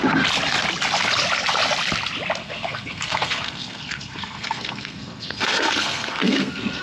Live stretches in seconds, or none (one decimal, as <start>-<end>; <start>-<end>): 0.0-2.4